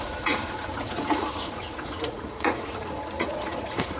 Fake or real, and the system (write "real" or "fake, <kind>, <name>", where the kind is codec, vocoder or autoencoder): fake, vocoder, Vocos